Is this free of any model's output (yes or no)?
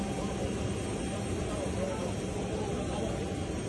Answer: yes